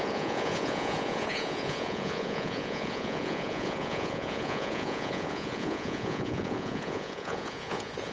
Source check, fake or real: fake